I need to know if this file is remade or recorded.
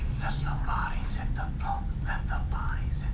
recorded